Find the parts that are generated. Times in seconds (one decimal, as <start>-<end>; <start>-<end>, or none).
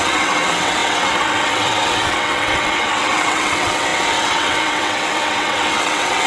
0.0-6.3